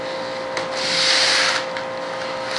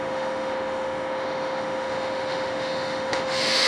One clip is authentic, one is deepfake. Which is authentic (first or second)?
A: first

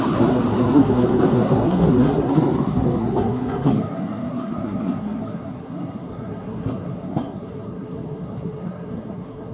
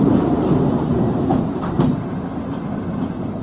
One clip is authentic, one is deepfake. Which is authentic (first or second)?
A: second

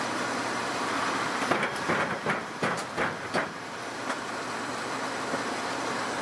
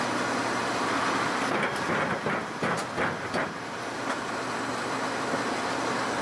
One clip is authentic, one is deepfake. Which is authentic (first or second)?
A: second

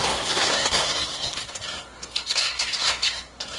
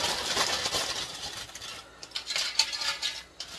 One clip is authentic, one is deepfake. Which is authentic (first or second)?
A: second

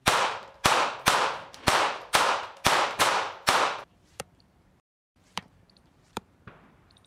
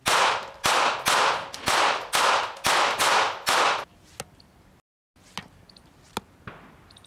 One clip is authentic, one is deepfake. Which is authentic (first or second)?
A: second